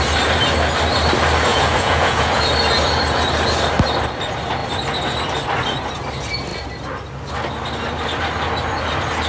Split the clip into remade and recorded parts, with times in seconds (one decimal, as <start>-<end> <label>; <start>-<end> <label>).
0.0-1.5 recorded; 1.5-2.4 remade; 2.4-9.3 recorded